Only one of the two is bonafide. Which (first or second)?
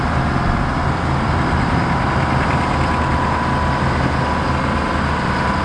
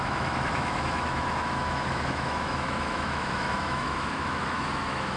first